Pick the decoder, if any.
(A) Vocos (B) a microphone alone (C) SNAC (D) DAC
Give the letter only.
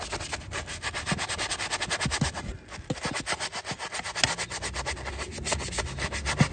B